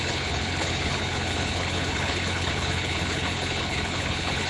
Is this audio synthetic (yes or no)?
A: yes